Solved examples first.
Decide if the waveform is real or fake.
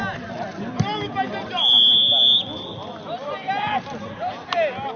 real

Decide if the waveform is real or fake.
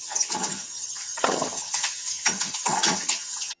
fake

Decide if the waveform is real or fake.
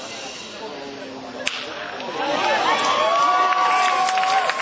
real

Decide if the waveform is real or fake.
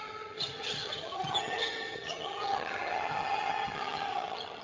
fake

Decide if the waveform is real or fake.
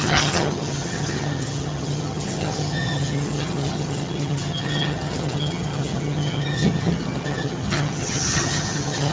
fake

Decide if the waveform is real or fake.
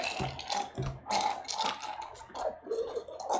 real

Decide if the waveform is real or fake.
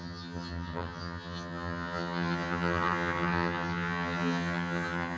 fake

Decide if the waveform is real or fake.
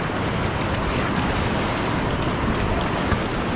real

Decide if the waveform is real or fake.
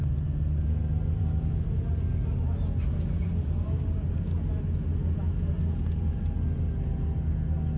real